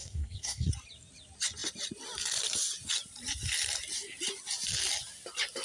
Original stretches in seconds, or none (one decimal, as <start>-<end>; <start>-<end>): 0.7-5.6